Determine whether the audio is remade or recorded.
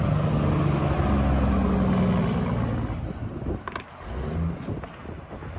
recorded